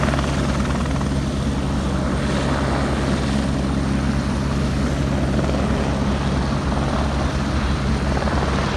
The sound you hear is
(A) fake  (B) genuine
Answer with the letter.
B